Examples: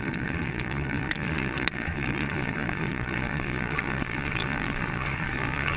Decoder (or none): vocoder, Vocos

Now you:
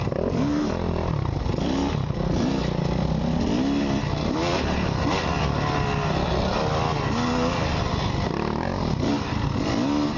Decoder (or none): none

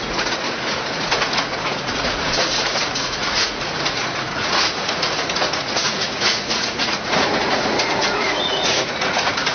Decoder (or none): vocoder, Vocos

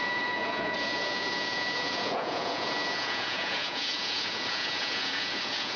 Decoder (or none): vocoder, Vocos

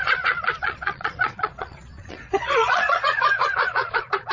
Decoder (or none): vocoder, Vocos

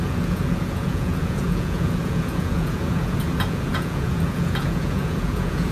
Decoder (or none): vocoder, Vocos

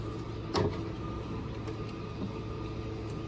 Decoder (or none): none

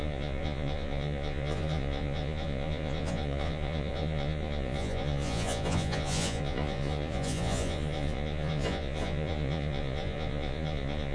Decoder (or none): vocoder, Vocos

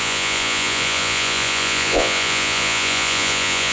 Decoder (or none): vocoder, Vocos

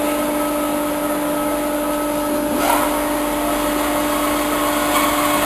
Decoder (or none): none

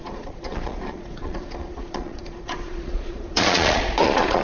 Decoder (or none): vocoder, Vocos